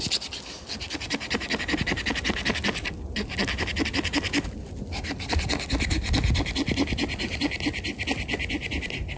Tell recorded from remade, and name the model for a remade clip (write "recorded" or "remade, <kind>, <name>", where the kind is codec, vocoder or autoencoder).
recorded